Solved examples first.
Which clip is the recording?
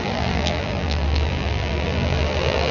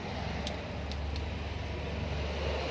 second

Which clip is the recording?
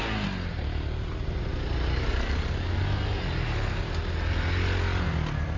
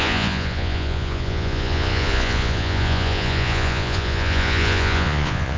first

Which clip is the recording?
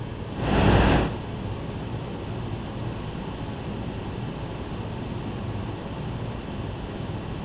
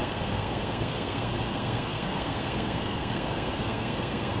first